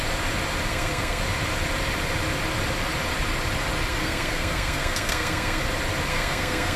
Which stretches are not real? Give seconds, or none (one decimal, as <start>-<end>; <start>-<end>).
0.7-1.2; 3.9-5.6; 6.1-6.8